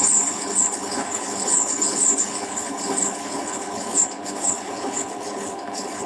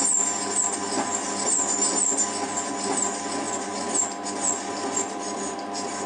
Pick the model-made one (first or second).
first